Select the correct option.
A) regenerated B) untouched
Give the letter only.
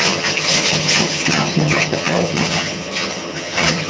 A